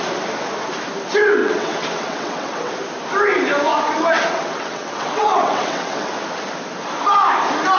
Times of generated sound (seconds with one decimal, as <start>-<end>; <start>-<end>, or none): 1.4-2.7; 4.0-6.1